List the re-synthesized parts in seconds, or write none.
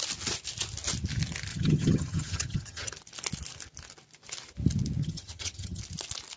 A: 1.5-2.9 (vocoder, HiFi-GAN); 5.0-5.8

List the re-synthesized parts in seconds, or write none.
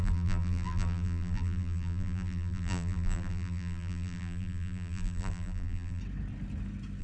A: 0.0-6.0 (vocoder, BigVGAN v2)